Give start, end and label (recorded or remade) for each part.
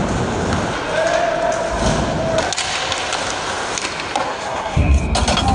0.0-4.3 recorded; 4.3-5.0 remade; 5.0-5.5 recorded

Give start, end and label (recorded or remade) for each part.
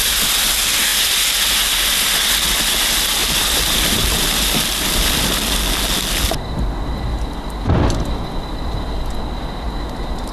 0.0-3.2 recorded; 3.2-5.2 remade; 5.2-7.1 recorded; 7.1-9.1 remade; 9.1-10.3 recorded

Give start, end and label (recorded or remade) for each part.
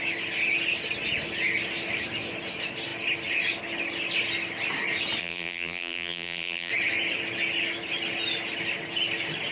0.0-5.2 recorded; 5.2-6.7 remade; 6.7-9.5 recorded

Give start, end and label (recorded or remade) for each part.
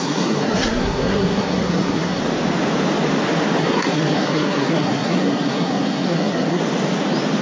0.0-2.2 remade; 2.2-3.6 recorded; 3.6-6.6 remade; 6.6-7.4 recorded